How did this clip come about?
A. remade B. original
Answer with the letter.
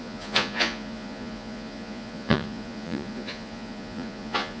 A